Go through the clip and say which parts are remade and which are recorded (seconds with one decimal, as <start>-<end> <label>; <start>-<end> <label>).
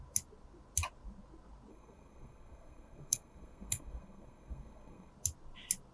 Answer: 0.0-1.7 recorded; 1.7-5.1 remade; 5.1-5.9 recorded